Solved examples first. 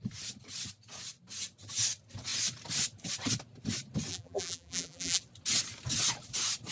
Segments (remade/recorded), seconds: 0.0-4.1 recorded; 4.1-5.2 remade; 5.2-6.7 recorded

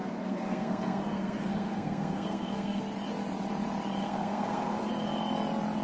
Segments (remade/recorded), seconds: 0.0-2.8 remade; 2.8-4.0 recorded; 4.0-4.9 remade; 4.9-5.8 recorded

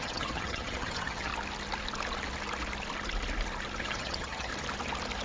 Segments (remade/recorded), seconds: 0.0-1.3 remade; 1.3-3.8 recorded; 3.8-4.5 remade; 4.5-5.2 recorded

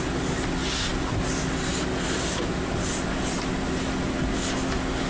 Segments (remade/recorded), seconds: 0.0-5.1 recorded

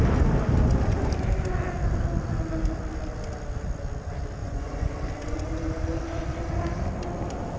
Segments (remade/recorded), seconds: 0.0-4.4 recorded; 4.4-4.9 remade; 4.9-7.6 recorded